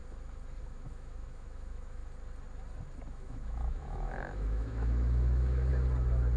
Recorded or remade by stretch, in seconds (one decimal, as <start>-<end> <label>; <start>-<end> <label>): 0.0-0.6 recorded; 0.6-2.0 remade; 2.0-3.1 recorded; 3.1-5.7 remade; 5.7-6.4 recorded